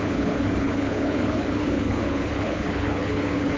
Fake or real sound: fake